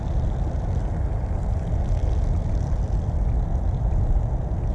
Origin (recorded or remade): recorded